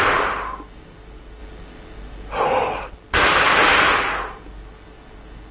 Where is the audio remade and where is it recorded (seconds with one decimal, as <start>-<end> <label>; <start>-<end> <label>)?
0.0-5.5 recorded